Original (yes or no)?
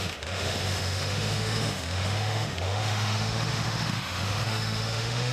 no